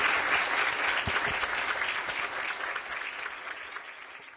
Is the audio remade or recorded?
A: recorded